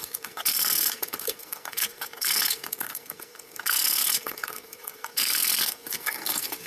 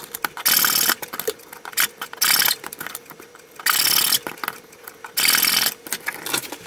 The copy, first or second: first